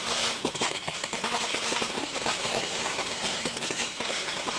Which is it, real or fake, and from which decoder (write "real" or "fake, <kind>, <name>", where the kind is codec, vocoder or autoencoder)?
fake, codec, SNAC